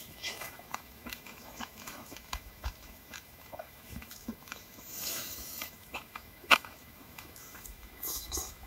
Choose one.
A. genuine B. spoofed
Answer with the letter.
B